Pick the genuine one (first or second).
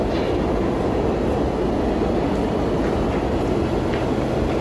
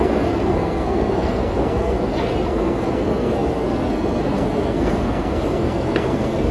first